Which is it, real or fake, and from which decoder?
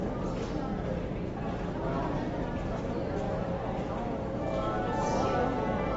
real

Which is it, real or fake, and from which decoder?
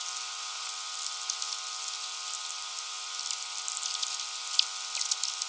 real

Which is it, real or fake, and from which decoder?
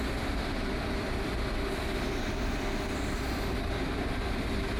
fake, vocoder, BigVGAN v2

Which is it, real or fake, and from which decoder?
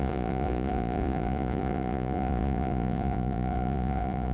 fake, vocoder, Vocos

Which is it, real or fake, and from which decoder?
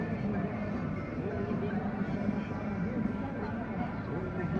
fake, vocoder, BigVGAN v2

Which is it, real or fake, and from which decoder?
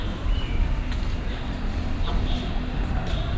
real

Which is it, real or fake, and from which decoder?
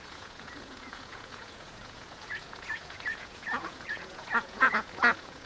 fake, vocoder, Vocos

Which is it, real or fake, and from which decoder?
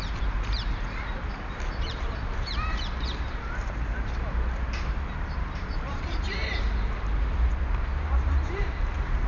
fake, vocoder, BigVGAN v2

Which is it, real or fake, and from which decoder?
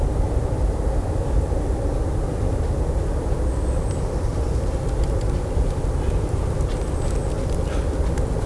real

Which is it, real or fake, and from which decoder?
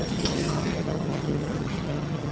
fake, vocoder, HiFi-GAN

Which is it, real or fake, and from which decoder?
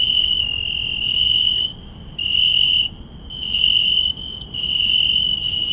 fake, vocoder, BigVGAN v2